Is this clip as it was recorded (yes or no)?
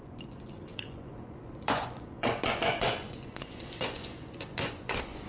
no